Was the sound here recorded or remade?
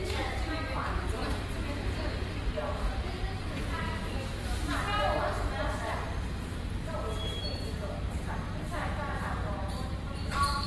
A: remade